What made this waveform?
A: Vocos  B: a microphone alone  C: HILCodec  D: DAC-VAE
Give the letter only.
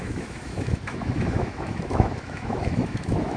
D